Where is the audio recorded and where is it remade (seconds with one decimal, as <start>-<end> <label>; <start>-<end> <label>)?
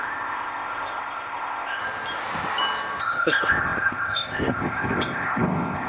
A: 0.0-1.8 remade; 1.8-3.0 recorded; 3.0-5.9 remade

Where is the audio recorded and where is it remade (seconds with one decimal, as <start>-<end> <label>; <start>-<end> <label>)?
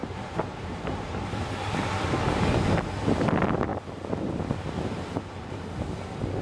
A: 0.0-1.3 remade; 1.3-6.4 recorded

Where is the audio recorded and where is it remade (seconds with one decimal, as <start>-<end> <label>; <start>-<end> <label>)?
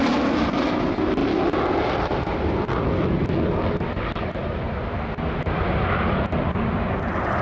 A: 0.0-7.4 recorded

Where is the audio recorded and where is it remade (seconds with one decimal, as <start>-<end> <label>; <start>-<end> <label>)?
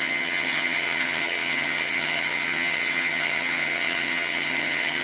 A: 0.0-5.0 remade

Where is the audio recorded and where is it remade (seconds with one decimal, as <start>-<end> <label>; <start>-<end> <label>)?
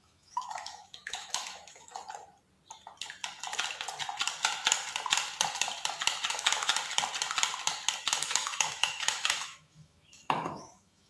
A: 0.0-1.9 remade; 1.9-6.3 recorded; 6.3-6.7 remade; 6.7-8.1 recorded; 8.1-11.1 remade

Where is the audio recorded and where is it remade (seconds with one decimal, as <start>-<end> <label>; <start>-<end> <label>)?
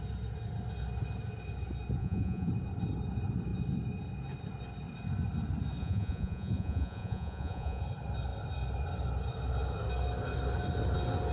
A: 0.0-2.0 recorded; 2.0-2.5 remade; 2.5-5.8 recorded; 5.8-7.8 remade; 7.8-11.3 recorded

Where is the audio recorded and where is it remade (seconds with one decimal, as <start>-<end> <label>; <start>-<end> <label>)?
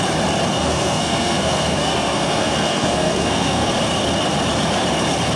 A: 0.0-0.5 recorded; 0.5-3.7 remade; 3.7-5.4 recorded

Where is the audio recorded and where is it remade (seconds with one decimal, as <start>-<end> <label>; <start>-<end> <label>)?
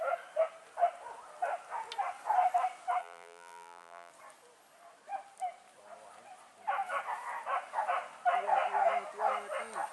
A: 0.0-3.0 recorded; 3.0-4.1 remade; 4.1-9.9 recorded